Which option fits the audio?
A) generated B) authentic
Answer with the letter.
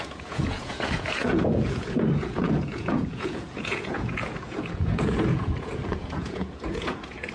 A